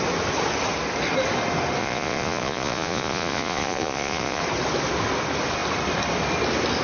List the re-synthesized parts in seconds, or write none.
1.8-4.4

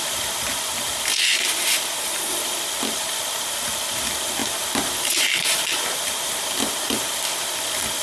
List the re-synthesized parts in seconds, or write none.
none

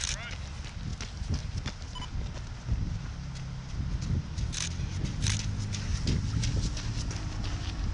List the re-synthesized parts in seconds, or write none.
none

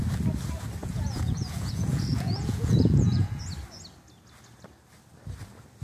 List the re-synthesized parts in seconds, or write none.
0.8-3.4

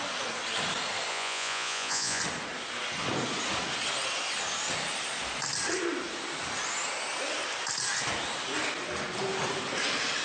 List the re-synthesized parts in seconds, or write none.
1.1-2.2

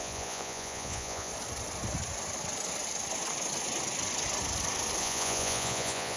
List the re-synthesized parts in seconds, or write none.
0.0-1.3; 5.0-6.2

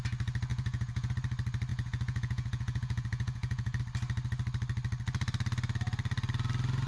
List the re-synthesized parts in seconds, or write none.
0.5-1.1; 1.7-3.8

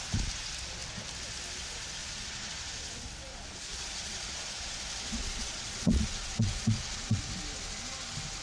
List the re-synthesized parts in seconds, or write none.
2.0-2.5; 3.3-7.2